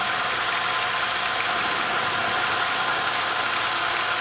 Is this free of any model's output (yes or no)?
yes